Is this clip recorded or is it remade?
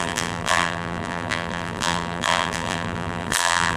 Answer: remade